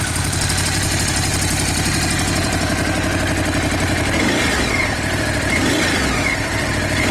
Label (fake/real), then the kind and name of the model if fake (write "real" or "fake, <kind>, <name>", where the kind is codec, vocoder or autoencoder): fake, vocoder, BigVGAN v2